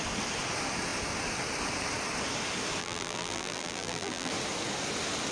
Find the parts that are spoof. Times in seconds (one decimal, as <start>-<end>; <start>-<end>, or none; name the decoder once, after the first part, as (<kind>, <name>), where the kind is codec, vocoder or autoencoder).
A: 2.8-4.3 (vocoder, BigVGAN v2)